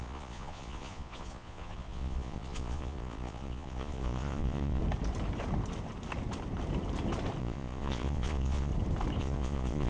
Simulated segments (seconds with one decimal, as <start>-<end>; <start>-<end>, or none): 0.0-4.8; 7.4-8.7; 9.2-9.9